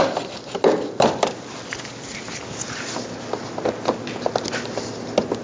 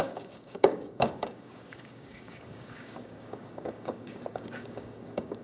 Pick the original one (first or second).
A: first